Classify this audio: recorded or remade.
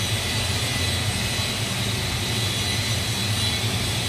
recorded